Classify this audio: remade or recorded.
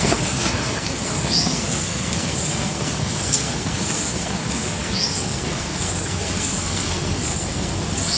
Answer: remade